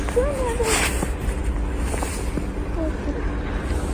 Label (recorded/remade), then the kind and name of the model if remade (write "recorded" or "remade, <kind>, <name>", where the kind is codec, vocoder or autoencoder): recorded